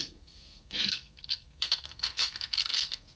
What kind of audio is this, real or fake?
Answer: fake